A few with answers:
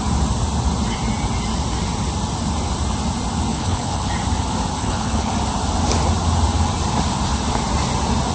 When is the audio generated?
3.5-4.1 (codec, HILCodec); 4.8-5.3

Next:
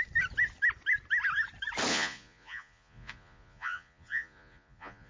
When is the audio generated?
1.9-5.1 (vocoder, Vocos)

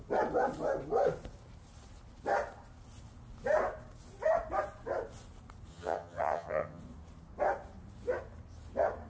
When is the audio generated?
5.7-6.8 (vocoder, HiFi-GAN)